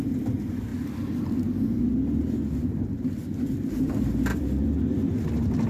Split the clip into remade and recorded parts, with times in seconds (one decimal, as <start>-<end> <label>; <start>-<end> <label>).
0.0-4.3 recorded; 4.3-5.1 remade; 5.1-5.7 recorded